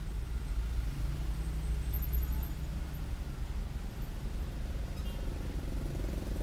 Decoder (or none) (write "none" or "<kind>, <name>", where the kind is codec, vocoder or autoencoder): none